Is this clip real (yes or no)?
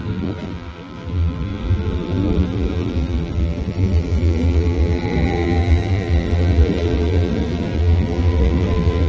no